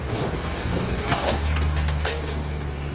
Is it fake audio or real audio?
fake